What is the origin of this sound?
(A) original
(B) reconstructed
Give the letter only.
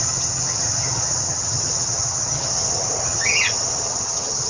B